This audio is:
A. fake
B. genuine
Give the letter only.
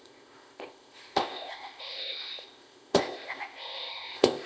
A